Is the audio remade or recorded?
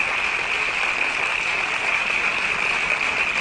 recorded